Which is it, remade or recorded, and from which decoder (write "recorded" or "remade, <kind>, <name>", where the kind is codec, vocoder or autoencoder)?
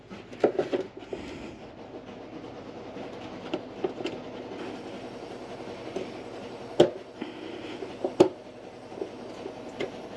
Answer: recorded